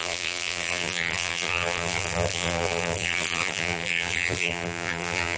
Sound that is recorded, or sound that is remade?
remade